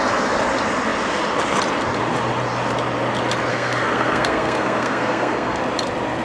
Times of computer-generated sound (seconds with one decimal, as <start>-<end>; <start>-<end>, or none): 3.5-5.6